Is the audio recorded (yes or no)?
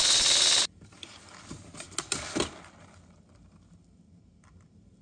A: yes